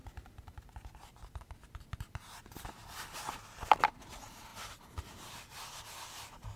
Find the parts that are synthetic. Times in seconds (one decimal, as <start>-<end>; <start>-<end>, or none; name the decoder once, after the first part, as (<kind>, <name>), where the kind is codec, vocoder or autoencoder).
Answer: none